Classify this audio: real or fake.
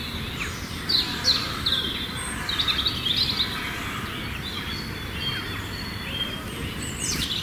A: real